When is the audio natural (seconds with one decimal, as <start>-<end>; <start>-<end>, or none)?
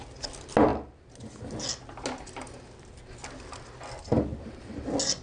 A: 0.0-5.2